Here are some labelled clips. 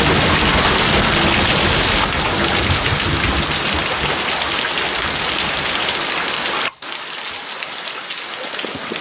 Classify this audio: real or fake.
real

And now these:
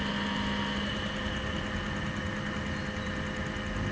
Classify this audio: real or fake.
real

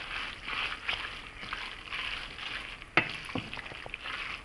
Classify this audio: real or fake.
real